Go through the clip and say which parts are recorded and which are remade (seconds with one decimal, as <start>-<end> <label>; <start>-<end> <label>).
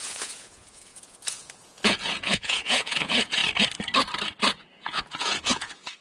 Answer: 0.0-3.4 remade; 3.4-4.5 recorded; 4.5-6.0 remade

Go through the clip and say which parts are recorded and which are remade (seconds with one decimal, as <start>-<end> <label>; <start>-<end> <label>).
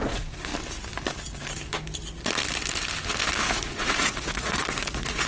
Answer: 0.0-0.5 remade; 0.5-3.4 recorded; 3.4-5.3 remade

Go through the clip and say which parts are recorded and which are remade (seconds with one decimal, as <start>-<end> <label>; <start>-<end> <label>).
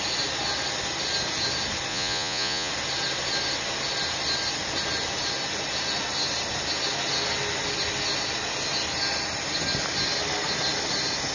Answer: 0.0-1.9 recorded; 1.9-2.7 remade; 2.7-11.3 recorded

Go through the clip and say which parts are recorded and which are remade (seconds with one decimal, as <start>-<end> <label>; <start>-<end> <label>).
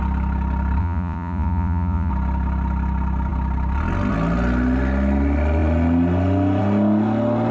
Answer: 0.0-0.8 recorded; 0.8-2.1 remade; 2.1-7.5 recorded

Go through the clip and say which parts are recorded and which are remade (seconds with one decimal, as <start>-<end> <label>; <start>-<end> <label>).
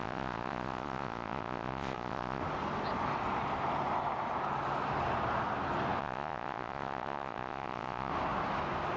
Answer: 0.0-2.4 remade; 2.4-6.0 recorded; 6.0-8.1 remade; 8.1-9.0 recorded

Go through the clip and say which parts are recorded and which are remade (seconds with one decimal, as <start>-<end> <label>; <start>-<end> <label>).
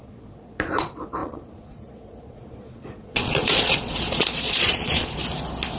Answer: 0.0-5.2 remade; 5.2-5.8 recorded